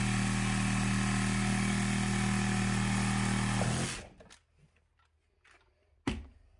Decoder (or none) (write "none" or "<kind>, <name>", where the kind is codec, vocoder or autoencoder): none